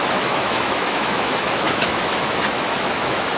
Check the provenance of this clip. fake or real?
fake